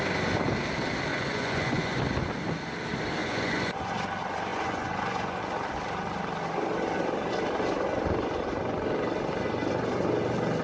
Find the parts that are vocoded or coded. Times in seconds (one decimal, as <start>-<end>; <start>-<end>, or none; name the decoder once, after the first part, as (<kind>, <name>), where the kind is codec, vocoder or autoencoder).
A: 1.1-2.0 (vocoder, Vocos); 3.2-3.9; 4.5-5.4